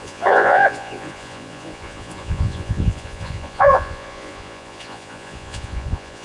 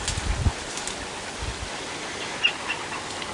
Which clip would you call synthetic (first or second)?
first